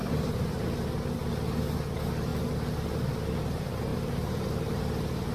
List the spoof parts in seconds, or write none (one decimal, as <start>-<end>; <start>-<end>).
0.0-0.6; 3.9-4.8